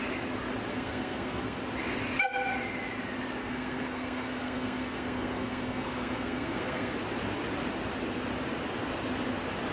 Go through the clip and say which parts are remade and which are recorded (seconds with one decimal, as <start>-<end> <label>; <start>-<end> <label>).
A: 0.0-0.7 recorded; 0.7-1.6 remade; 1.6-3.4 recorded; 3.4-7.0 remade; 7.0-9.7 recorded